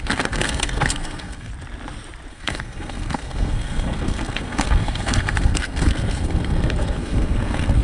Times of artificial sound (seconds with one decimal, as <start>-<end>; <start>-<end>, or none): 0.0-1.5; 2.3-7.8